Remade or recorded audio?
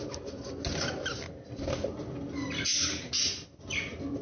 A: recorded